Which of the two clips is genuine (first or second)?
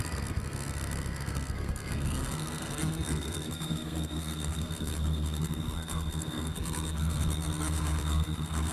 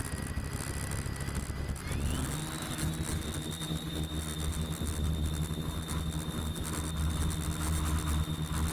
second